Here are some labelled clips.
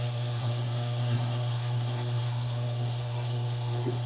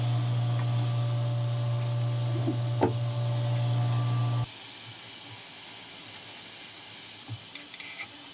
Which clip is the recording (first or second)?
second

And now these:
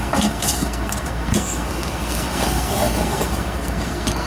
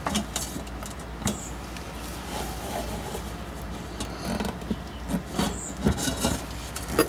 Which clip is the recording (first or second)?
second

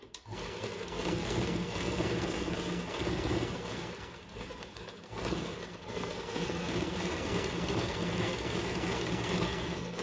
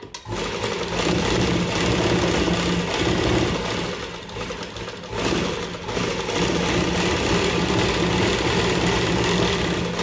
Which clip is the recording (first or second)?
second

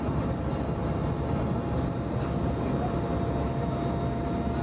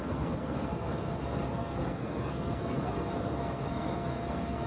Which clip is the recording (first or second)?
first